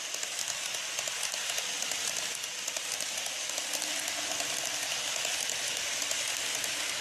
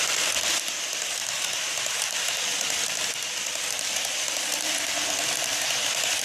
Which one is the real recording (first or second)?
first